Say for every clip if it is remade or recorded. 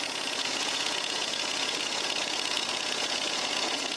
remade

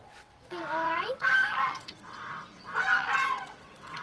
remade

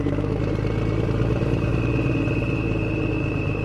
remade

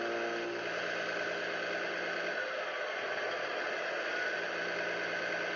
recorded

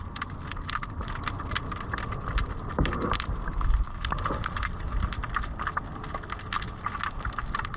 recorded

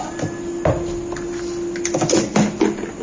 recorded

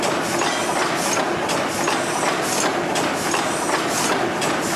recorded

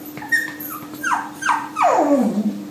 remade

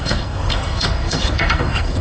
remade